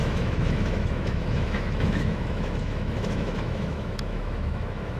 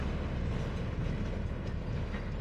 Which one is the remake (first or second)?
first